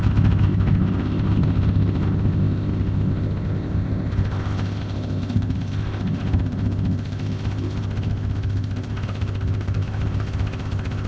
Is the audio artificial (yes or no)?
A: yes